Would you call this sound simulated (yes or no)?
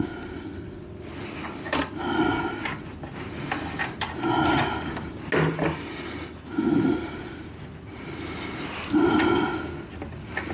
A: no